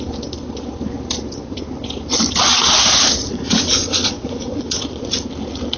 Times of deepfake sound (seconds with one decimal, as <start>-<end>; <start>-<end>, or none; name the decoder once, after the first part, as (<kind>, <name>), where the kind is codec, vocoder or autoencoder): 2.5-5.0 (vocoder, Vocos)